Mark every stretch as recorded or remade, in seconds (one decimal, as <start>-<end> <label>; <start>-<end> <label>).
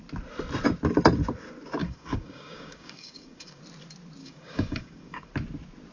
0.0-1.8 recorded; 1.8-3.6 remade; 3.6-4.2 recorded; 4.2-5.3 remade; 5.3-5.9 recorded